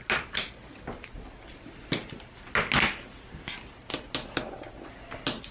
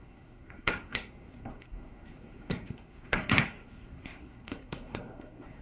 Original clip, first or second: first